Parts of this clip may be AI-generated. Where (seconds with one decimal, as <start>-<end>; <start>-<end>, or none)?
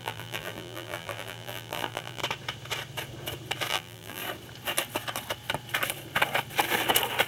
0.0-2.2; 3.7-4.2